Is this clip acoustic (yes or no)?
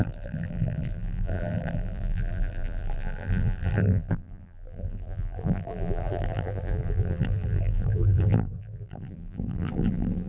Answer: no